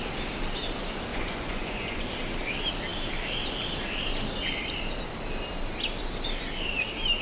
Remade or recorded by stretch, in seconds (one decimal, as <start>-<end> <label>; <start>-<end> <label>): 0.0-1.1 recorded; 1.1-2.0 remade; 2.0-7.2 recorded